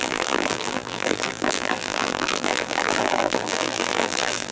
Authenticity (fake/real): fake